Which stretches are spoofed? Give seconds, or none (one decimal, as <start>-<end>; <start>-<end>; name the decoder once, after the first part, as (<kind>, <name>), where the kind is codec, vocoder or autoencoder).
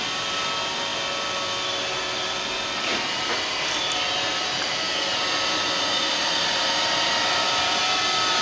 2.9-7.8 (vocoder, BigVGAN v2)